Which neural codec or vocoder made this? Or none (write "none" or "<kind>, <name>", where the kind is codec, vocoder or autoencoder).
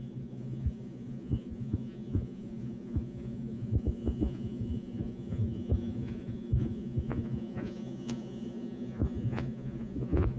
vocoder, Vocos